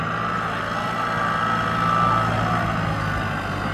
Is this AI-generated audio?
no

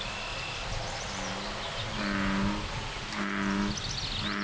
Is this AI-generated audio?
no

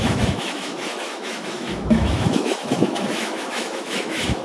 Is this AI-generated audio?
yes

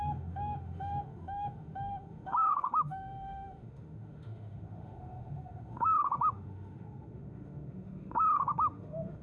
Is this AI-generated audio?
yes